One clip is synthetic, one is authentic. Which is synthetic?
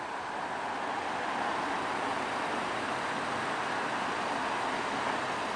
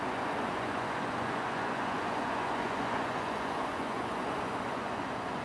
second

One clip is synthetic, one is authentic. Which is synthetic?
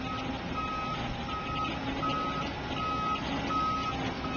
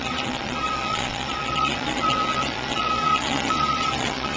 second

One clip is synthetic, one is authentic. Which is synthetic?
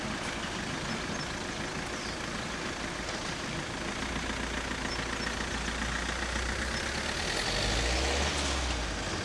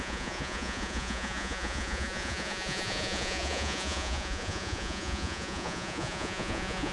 second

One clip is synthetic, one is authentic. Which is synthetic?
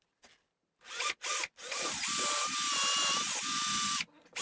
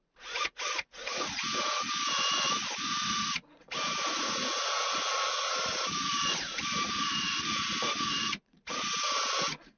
second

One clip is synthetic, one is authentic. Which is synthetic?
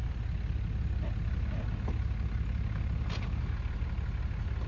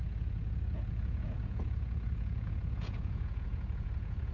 second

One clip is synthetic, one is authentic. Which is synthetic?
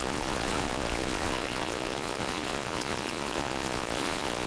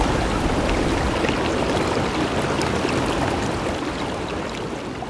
first